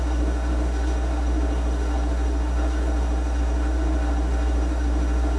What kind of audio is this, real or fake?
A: fake